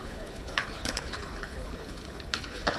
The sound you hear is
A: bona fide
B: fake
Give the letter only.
B